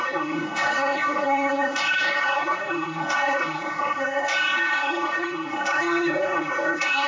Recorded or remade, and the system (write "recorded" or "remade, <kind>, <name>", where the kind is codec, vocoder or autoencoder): remade, codec, SNAC